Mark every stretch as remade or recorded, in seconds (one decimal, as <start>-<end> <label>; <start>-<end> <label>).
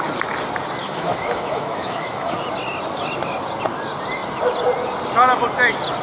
0.0-0.8 recorded; 0.8-2.4 remade; 2.4-6.0 recorded